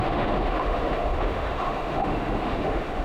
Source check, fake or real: fake